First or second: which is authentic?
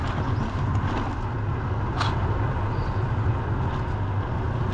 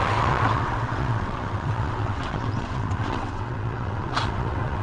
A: first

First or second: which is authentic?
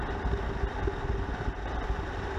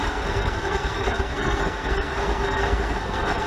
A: first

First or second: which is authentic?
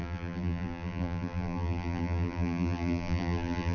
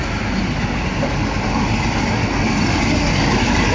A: second